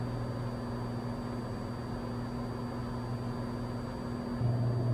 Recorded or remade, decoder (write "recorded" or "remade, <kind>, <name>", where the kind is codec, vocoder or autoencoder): recorded